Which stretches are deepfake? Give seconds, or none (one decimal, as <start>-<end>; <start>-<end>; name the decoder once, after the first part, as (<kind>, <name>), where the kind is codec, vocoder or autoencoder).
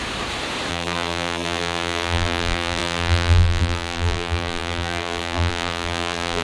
0.7-6.4 (vocoder, BigVGAN v2)